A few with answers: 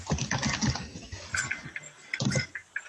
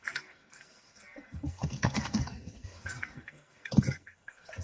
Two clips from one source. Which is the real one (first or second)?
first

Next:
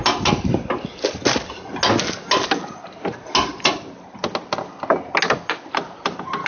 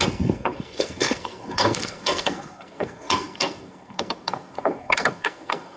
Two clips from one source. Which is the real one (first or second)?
first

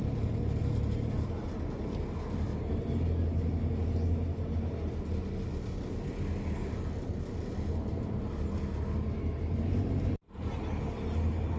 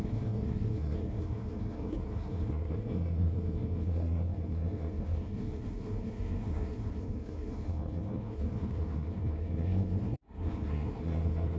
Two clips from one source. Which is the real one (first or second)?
first